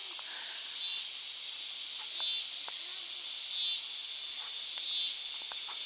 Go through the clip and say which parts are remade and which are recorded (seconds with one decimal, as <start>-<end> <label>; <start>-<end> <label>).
0.0-5.9 recorded